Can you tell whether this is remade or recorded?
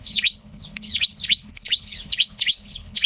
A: remade